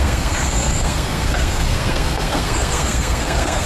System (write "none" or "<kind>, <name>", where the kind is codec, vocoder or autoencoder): codec, SNAC